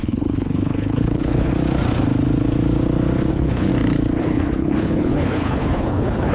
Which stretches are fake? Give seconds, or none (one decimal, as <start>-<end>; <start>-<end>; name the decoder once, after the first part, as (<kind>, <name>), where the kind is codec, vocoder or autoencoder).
0.0-1.5 (codec, HILCodec); 3.3-3.7; 4.2-6.3